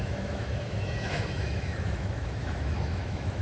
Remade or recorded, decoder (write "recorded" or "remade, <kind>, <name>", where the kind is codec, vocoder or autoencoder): remade, autoencoder, DAC-VAE